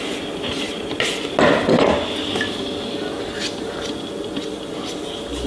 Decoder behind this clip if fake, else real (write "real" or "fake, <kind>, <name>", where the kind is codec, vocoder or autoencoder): real